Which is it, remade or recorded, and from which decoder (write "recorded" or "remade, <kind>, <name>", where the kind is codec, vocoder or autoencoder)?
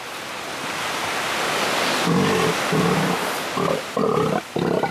recorded